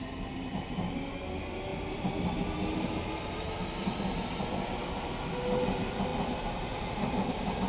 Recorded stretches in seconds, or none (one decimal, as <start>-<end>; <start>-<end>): 0.0-7.7